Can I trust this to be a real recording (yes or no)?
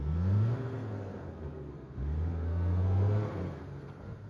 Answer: no